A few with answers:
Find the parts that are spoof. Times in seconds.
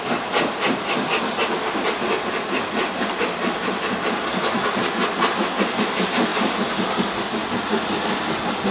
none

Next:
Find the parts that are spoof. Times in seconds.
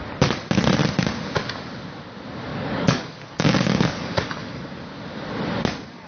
2.5-4.8 (codec, DAC)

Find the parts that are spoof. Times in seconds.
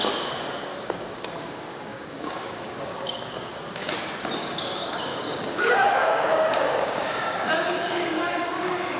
0.7-3.9 (codec, DAC); 4.4-9.0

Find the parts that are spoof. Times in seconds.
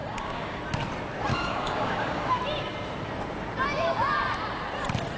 0.0-0.6 (codec, DAC); 1.3-2.4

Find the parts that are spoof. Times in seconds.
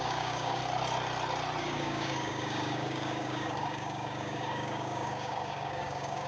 0.0-0.6 (codec, DAC); 1.6-6.3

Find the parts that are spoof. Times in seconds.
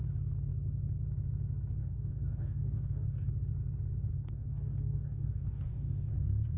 1.8-3.3 (codec, DAC); 4.1-6.1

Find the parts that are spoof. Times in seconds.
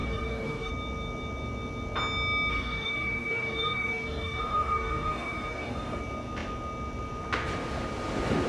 0.0-0.7 (codec, DAC); 2.5-6.0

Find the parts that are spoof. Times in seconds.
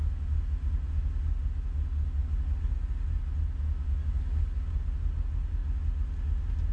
4.0-4.7 (codec, DAC)